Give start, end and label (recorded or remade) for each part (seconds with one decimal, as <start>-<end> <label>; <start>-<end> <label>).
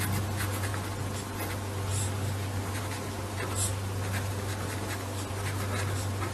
0.0-6.3 recorded